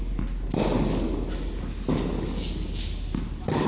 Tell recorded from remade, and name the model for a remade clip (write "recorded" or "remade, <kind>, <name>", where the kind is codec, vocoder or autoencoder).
recorded